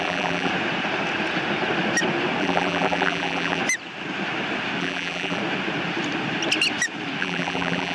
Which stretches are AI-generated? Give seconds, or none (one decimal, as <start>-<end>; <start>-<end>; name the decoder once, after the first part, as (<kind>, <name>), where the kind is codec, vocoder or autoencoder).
0.0-0.5 (vocoder, BigVGAN v2); 2.4-3.6; 4.8-5.4; 7.2-7.9